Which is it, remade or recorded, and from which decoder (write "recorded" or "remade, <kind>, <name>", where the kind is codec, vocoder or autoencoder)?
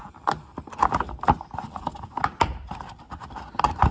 recorded